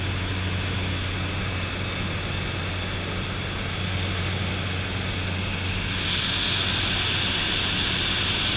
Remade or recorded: recorded